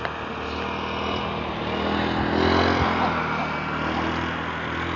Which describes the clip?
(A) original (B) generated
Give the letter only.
A